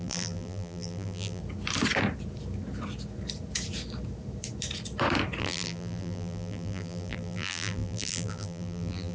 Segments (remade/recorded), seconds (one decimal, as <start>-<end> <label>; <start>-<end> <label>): 0.0-1.4 remade; 1.4-5.4 recorded; 5.4-9.1 remade